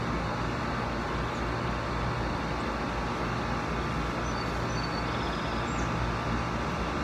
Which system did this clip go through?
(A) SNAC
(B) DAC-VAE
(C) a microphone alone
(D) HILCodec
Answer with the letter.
C